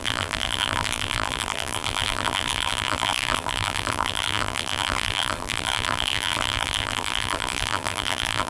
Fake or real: fake